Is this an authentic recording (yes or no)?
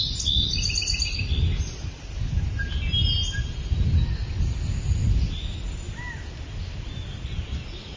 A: yes